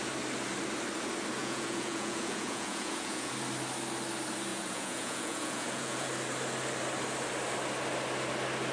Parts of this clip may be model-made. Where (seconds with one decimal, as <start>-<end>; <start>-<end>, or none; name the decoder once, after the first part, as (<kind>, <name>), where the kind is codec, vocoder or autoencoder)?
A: 1.4-3.3 (vocoder, Vocos); 4.5-6.1